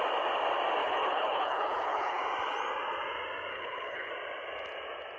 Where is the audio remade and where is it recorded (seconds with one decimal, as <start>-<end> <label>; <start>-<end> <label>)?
0.0-0.8 recorded; 0.8-2.2 remade; 2.2-3.5 recorded; 3.5-4.1 remade; 4.1-5.2 recorded